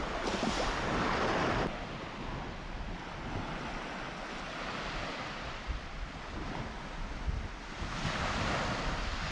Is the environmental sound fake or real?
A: real